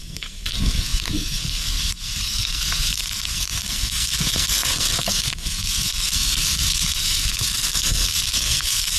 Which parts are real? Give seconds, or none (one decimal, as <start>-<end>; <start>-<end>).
none